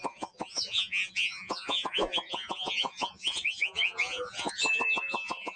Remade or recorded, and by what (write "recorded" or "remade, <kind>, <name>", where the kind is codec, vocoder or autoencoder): remade, vocoder, Vocos